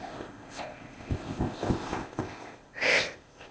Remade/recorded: remade